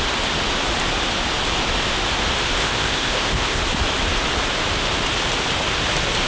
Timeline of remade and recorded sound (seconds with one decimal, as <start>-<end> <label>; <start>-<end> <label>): 0.0-2.6 recorded; 2.6-3.6 remade; 3.6-6.3 recorded